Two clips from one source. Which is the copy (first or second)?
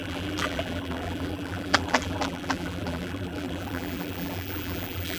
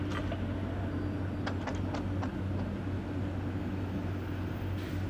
first